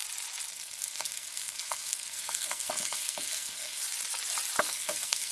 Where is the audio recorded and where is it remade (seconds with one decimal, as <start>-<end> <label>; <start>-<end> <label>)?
0.0-0.5 recorded; 0.5-3.8 remade; 3.8-4.6 recorded; 4.6-5.3 remade